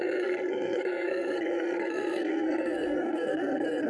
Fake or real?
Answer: fake